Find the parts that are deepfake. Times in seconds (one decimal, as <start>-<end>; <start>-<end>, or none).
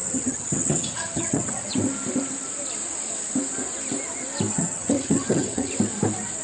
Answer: 0.0-1.7; 4.5-5.7